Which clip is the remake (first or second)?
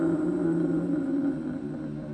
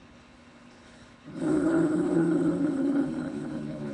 second